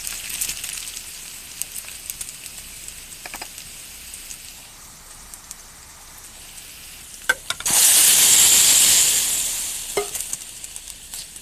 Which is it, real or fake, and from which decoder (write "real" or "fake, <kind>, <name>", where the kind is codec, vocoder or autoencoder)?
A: real